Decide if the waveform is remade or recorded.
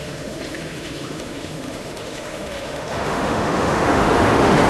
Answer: remade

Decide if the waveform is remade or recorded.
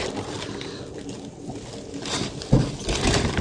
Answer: recorded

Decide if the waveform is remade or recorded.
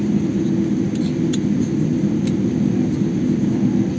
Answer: recorded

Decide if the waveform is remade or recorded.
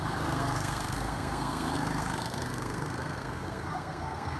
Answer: remade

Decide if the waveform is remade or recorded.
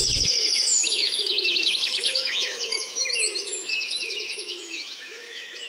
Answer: remade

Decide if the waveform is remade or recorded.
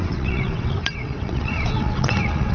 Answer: remade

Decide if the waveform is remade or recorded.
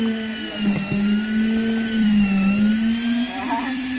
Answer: recorded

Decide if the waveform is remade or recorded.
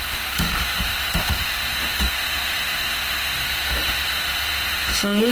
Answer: remade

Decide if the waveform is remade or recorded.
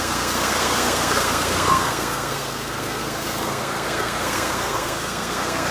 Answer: remade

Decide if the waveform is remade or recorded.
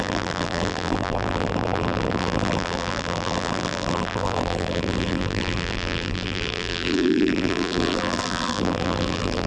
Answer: remade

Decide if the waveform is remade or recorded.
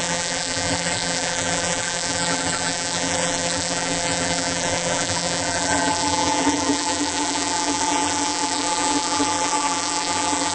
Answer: remade